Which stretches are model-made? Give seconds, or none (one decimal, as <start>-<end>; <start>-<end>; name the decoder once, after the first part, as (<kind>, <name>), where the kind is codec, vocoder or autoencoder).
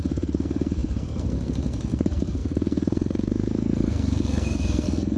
0.0-5.2 (codec, SNAC)